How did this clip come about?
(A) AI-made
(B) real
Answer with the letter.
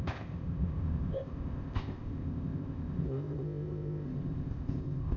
A